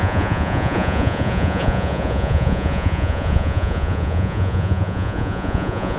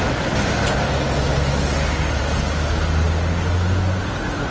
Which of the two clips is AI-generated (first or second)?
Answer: first